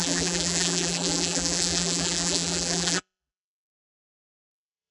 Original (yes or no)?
no